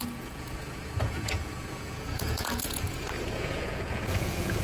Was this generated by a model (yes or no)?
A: yes